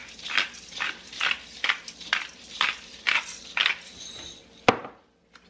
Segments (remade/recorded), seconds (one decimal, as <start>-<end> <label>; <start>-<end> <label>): 0.0-1.6 remade; 1.6-2.3 recorded; 2.3-3.4 remade; 3.4-4.8 recorded; 4.8-5.5 remade